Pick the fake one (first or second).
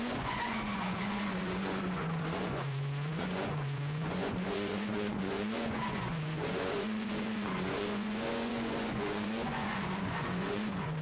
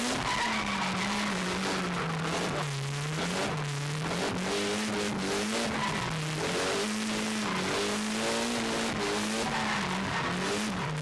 first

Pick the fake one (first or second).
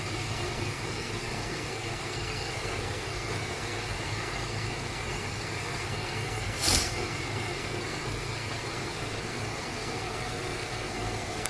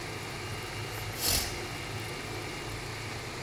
first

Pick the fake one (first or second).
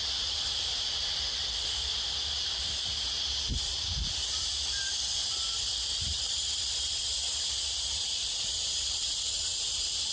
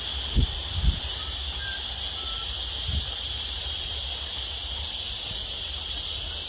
first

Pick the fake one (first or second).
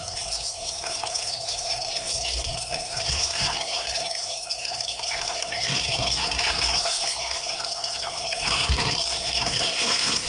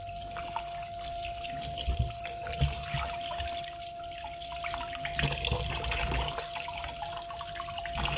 first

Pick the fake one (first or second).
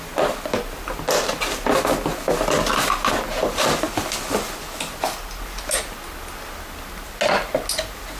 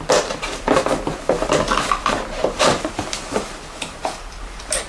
second